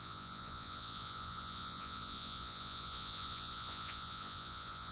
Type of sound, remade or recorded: remade